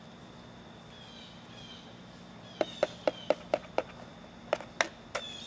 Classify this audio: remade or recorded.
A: recorded